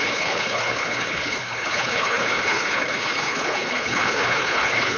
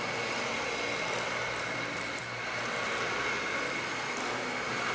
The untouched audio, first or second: second